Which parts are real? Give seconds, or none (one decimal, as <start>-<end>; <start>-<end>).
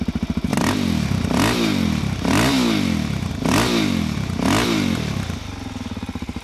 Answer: 0.0-6.4